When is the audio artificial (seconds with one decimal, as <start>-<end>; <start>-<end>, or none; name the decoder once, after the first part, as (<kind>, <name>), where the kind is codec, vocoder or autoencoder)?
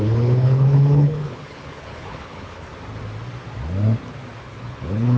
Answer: 0.0-2.7 (codec, HILCodec); 4.4-5.2